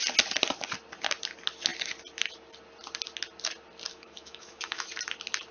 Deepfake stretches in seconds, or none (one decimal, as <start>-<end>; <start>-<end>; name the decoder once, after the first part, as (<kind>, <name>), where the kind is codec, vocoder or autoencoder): 3.9-4.9 (autoencoder, DAC-VAE)